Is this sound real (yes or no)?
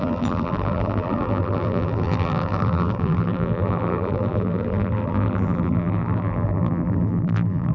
no